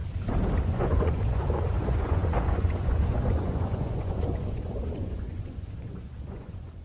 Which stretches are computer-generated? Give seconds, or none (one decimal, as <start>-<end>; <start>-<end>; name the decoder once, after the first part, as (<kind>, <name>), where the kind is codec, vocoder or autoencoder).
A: 0.6-6.8 (vocoder, Vocos)